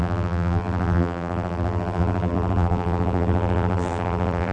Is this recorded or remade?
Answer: remade